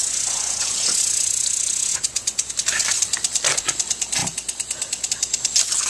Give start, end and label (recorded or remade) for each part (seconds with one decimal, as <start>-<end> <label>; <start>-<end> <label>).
0.0-1.0 remade; 1.0-1.9 recorded; 1.9-2.5 remade; 2.5-5.9 recorded